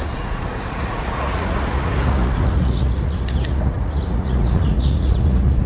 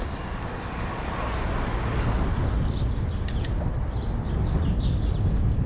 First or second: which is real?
second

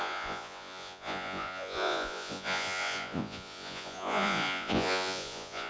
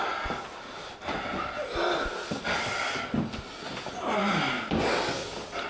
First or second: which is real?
second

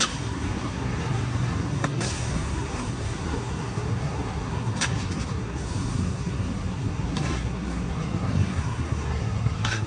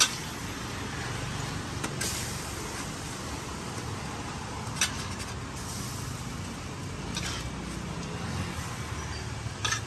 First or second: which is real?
second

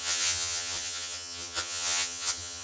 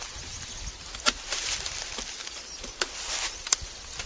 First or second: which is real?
second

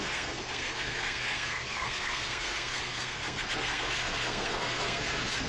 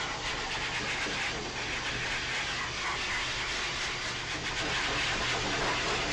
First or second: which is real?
second